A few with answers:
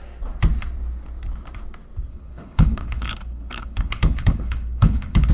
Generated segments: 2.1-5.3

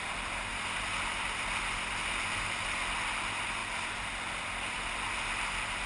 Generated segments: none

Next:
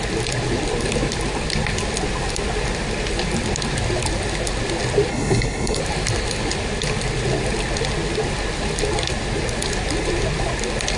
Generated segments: 5.1-5.8

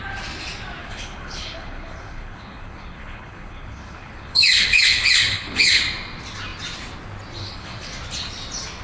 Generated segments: 0.8-5.8; 7.4-7.9

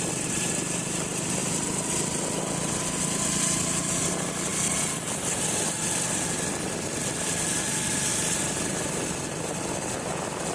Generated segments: none

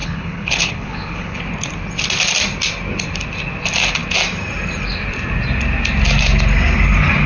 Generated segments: 0.0-1.4